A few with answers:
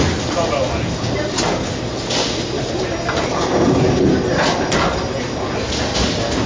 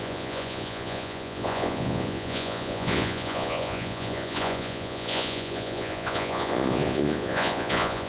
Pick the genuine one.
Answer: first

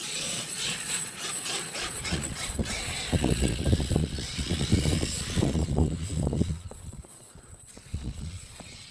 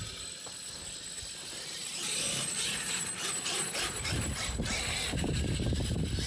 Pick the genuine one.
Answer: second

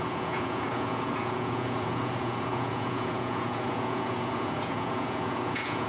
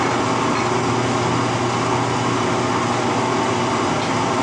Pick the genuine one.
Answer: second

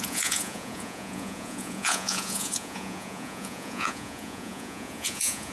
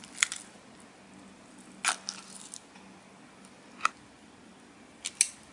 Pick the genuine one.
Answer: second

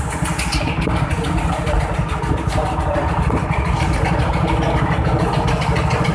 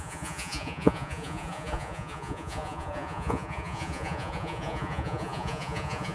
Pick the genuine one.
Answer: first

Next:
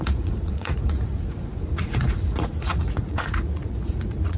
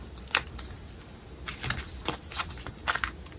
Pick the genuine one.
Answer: second